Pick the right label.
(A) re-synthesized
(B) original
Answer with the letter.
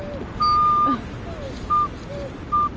B